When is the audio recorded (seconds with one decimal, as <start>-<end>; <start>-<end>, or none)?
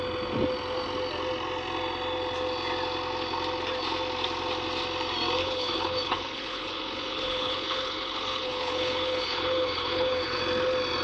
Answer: 0.0-5.4; 10.4-11.0